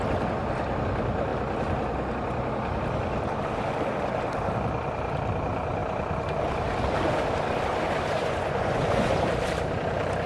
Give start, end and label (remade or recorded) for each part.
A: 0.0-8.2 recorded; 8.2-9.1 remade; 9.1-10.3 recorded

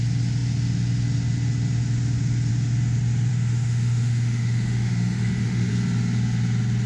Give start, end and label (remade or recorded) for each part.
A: 0.0-3.3 recorded; 3.3-5.7 remade; 5.7-6.9 recorded